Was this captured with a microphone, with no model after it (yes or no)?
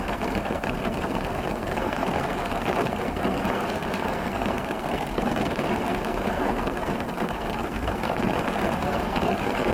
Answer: no